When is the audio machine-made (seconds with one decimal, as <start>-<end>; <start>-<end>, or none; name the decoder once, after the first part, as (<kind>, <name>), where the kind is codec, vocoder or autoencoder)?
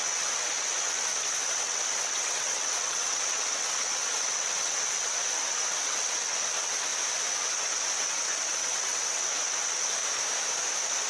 0.0-6.9 (vocoder, WaveNeXt); 7.4-10.0